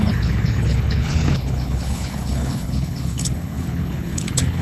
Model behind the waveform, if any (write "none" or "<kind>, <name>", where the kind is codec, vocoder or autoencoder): codec, HILCodec